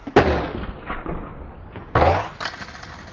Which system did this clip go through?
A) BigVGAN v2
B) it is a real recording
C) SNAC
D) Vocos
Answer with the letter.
B